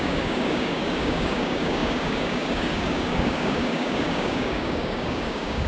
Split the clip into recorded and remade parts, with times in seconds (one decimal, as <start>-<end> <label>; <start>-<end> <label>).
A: 0.0-5.7 remade